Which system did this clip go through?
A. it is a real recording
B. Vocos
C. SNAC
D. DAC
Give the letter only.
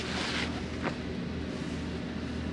A